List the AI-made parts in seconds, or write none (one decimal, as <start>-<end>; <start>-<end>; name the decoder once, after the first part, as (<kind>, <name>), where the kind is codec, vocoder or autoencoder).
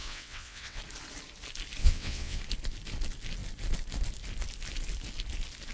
0.0-0.8 (vocoder, WaveNeXt); 1.8-2.4